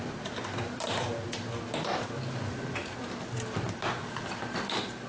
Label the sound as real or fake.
real